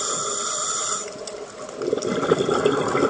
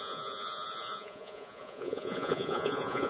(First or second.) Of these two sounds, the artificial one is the second